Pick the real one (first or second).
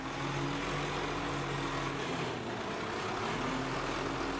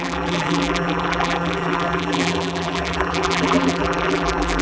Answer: first